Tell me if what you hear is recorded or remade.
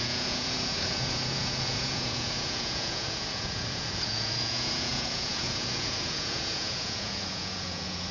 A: remade